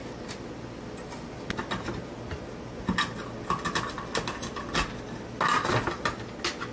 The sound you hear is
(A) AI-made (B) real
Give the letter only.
B